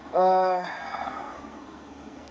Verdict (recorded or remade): remade